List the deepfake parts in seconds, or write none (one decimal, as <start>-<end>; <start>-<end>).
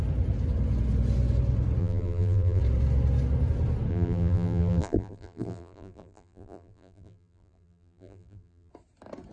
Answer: 1.8-2.6; 3.9-8.7